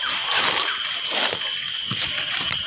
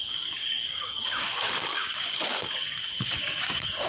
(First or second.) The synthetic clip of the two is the second